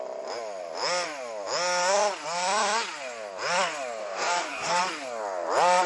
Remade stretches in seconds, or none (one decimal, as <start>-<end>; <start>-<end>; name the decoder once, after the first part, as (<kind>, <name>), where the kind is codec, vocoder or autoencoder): 4.0-4.8 (codec, DAC)